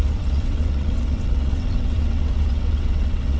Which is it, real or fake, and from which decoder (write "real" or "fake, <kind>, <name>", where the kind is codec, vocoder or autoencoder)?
fake, vocoder, WaveNeXt